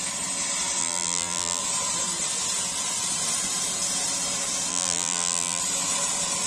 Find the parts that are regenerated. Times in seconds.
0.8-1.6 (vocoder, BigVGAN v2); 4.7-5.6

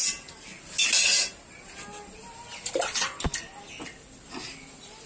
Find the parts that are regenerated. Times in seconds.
none

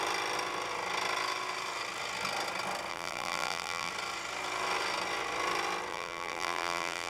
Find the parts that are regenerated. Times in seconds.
2.9-3.9 (vocoder, BigVGAN v2); 5.9-7.1